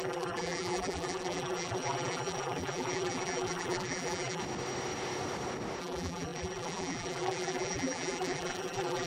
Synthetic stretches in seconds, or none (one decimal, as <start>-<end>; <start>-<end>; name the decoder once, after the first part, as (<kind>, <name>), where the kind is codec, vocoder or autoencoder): 0.0-4.4 (vocoder, BigVGAN v2); 5.8-9.1